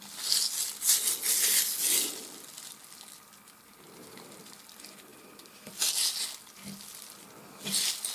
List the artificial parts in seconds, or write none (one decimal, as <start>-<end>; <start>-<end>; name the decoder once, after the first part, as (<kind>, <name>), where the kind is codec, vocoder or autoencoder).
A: none